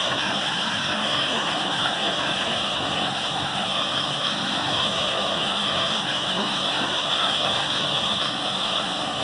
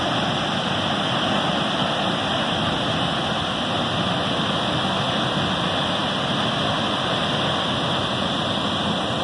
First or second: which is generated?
first